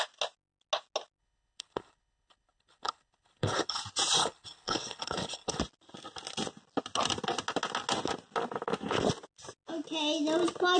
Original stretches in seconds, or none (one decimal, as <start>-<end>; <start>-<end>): 0.0-1.2; 3.8-4.2; 5.6-10.8